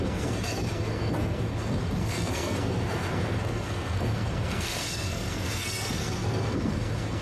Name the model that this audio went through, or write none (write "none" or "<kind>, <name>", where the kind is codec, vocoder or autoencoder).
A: codec, SNAC